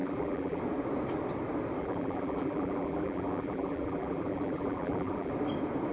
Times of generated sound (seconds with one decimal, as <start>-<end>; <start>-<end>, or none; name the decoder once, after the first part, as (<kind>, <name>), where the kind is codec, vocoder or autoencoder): 0.0-0.6 (vocoder, BigVGAN v2); 1.8-5.3